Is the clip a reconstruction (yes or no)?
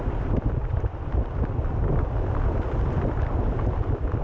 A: yes